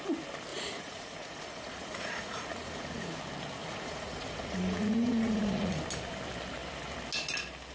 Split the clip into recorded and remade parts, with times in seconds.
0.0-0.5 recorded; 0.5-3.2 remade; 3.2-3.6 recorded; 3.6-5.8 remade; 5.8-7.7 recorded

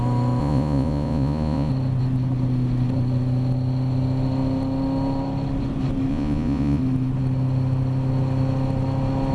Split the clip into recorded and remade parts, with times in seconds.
0.0-0.4 recorded; 0.4-1.7 remade; 1.7-6.1 recorded; 6.1-6.8 remade; 6.8-9.3 recorded

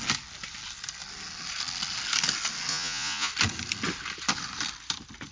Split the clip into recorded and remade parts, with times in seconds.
0.0-2.7 recorded; 2.7-3.3 remade; 3.3-5.3 recorded

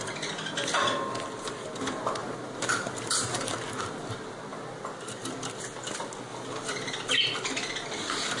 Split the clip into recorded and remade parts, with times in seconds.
0.0-8.4 recorded